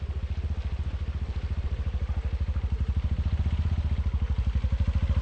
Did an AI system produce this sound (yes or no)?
no